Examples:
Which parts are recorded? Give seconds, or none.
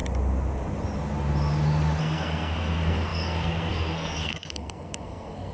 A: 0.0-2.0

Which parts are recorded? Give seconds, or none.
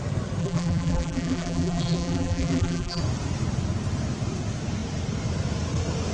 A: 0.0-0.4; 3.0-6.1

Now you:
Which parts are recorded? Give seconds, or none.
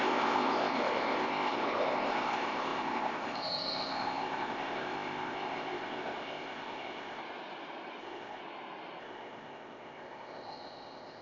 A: 7.2-8.0; 8.4-9.0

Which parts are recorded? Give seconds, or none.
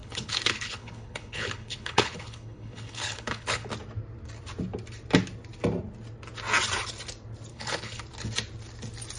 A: 3.7-7.5; 8.0-9.2